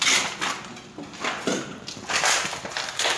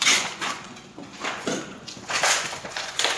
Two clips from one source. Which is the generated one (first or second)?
second